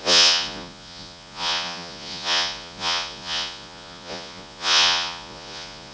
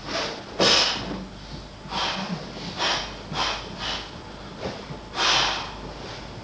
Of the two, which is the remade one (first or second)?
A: first